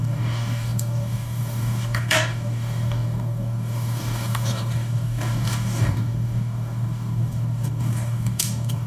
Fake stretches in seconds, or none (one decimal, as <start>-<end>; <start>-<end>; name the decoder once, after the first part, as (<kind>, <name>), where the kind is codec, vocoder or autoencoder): 0.0-8.9 (codec, DAC)